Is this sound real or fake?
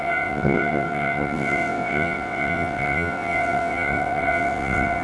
fake